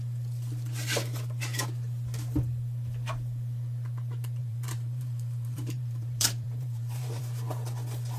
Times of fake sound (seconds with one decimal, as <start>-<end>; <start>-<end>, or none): 4.4-7.2